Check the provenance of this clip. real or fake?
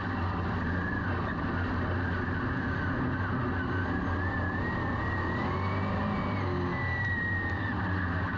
real